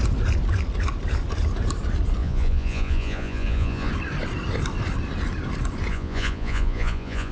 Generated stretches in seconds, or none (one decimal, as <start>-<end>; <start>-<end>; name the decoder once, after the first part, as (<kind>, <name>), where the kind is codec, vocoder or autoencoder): 2.2-3.9 (vocoder, Vocos); 5.9-7.3